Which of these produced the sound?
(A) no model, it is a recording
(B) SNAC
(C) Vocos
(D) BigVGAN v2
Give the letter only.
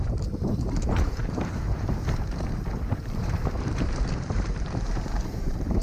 D